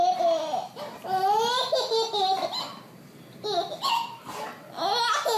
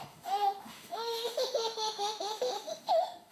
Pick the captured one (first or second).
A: first